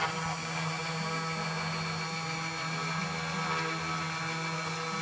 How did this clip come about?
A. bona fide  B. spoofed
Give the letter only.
A